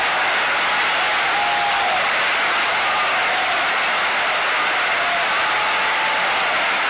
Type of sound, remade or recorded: recorded